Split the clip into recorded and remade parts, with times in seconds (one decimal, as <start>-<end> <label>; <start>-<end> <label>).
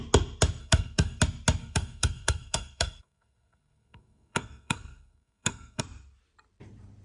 0.0-0.6 recorded; 0.6-1.2 remade; 1.2-1.6 recorded; 1.6-5.8 remade; 5.8-7.0 recorded